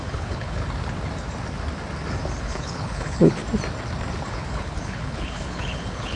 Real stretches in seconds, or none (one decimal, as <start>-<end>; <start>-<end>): 0.6-2.4; 3.4-4.3